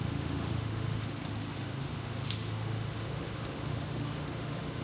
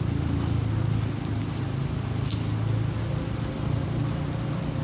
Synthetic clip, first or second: first